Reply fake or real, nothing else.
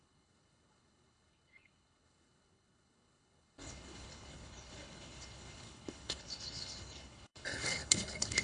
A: fake